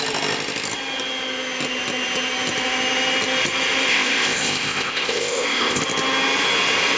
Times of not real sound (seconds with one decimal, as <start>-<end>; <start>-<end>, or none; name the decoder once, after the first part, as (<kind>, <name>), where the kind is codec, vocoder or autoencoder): 3.9-5.8 (codec, ZipCodec)